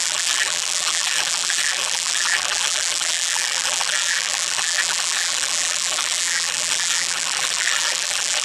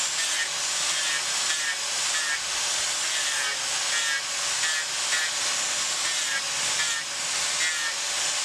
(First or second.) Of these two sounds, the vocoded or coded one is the first